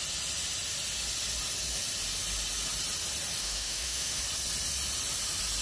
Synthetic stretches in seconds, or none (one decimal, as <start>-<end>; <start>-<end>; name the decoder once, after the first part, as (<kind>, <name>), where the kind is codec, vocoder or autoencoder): 3.4-4.2 (autoencoder, DAC-VAE)